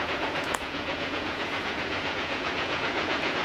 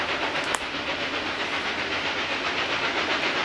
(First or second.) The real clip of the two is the second